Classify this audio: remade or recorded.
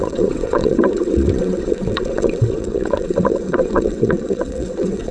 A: remade